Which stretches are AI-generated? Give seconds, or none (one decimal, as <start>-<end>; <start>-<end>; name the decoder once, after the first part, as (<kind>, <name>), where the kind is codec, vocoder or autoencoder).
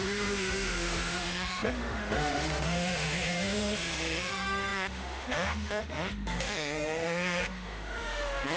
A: 0.0-8.6 (autoencoder, DAC-VAE)